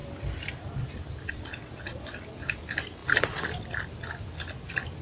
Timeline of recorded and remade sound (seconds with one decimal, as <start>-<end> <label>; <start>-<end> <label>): 0.0-1.3 remade; 1.3-5.0 recorded

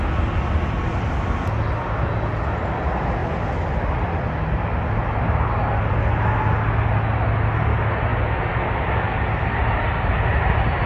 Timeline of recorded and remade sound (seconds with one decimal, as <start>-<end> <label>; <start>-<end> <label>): 0.0-10.9 recorded

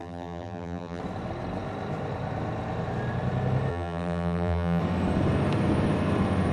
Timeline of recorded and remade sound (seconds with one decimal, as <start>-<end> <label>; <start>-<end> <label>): 0.0-1.0 remade; 1.0-3.7 recorded; 3.7-4.8 remade; 4.8-6.5 recorded